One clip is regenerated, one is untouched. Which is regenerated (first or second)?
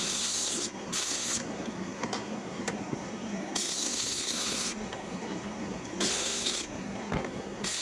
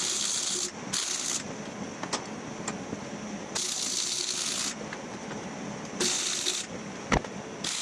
first